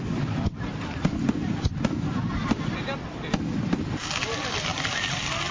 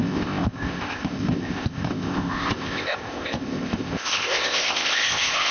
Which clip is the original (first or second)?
first